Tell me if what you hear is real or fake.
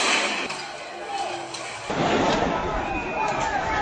real